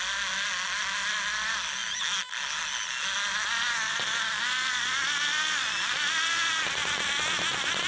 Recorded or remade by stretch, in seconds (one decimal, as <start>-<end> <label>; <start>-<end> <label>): 0.0-7.9 recorded

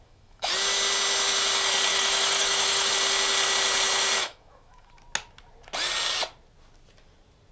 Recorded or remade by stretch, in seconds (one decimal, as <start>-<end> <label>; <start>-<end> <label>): 0.0-0.5 remade; 0.5-1.9 recorded; 1.9-2.9 remade; 2.9-4.2 recorded; 4.2-4.9 remade; 4.9-7.5 recorded

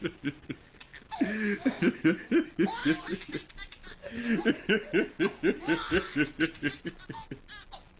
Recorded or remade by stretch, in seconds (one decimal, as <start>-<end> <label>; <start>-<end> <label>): 0.0-0.9 recorded; 0.9-1.8 remade; 1.8-8.0 recorded